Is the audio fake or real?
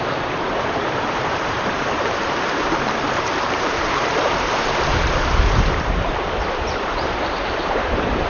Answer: fake